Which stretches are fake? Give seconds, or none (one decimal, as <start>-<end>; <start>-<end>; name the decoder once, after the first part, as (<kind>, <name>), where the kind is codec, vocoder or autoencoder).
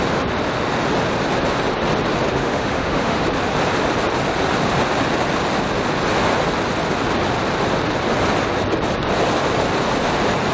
2.3-3.2 (autoencoder, DAC-VAE)